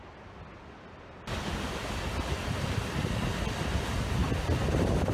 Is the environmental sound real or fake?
real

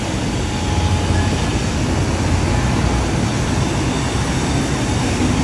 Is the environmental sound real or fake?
real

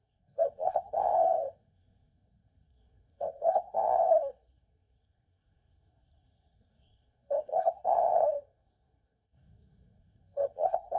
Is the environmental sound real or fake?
fake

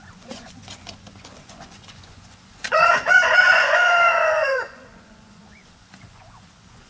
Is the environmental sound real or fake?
fake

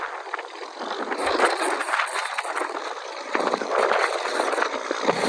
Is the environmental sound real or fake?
fake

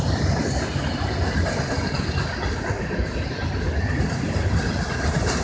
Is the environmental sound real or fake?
real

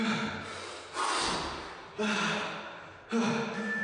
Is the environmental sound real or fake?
real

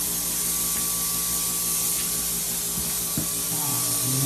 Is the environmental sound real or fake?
real